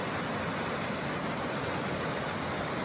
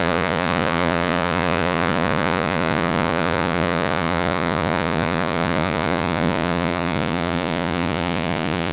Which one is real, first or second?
first